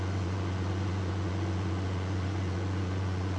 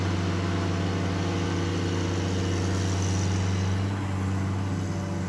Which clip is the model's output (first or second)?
first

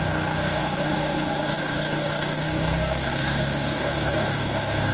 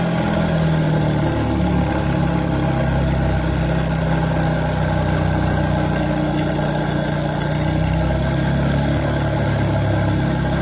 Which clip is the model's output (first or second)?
first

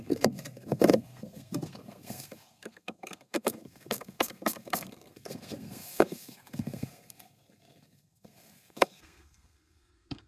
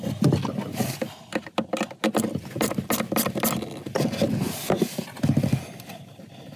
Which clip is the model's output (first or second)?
first